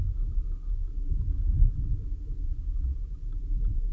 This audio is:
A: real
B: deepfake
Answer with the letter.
B